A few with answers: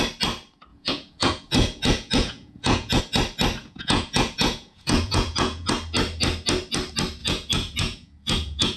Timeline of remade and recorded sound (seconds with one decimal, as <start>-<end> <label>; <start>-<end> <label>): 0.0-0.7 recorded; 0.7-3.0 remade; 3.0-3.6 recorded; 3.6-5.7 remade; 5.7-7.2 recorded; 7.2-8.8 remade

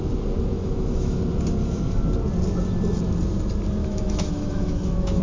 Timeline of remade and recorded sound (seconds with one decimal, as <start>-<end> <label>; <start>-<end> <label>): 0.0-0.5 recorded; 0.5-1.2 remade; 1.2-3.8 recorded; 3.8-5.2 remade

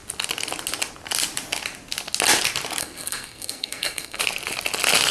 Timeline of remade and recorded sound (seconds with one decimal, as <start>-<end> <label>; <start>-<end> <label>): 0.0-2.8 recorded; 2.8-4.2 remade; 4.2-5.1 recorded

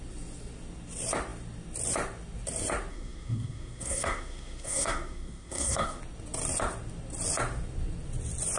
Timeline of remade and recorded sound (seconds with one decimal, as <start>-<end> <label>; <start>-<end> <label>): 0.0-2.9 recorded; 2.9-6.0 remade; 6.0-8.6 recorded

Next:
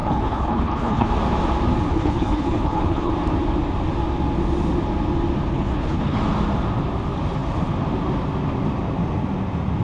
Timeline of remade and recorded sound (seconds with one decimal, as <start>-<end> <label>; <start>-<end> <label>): 0.0-1.1 remade; 1.1-1.9 recorded; 1.9-3.1 remade; 3.1-5.5 recorded; 5.5-6.2 remade; 6.2-9.8 recorded